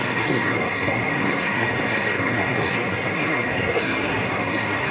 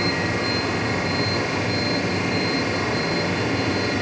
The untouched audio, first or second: second